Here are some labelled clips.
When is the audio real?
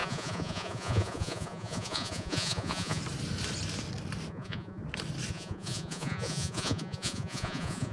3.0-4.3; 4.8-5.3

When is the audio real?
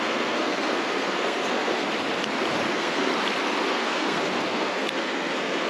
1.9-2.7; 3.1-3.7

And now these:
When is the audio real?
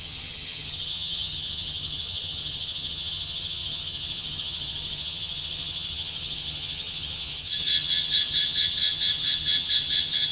none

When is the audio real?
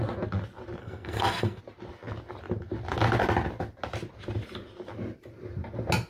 0.0-0.8; 1.6-6.1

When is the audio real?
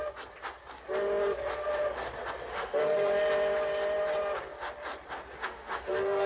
0.0-2.5; 3.1-5.4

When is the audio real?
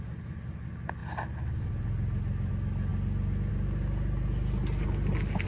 0.0-5.5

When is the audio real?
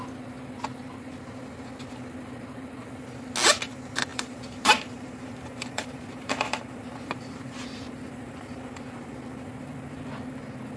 0.0-4.1; 9.1-10.8